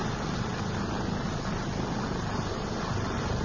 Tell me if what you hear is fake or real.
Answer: real